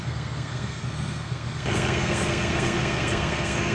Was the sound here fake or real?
fake